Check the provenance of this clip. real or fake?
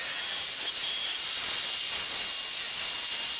real